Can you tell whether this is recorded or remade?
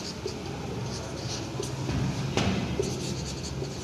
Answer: recorded